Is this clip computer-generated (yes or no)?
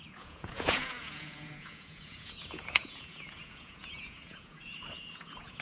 yes